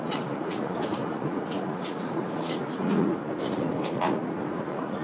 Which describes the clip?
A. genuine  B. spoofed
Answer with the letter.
B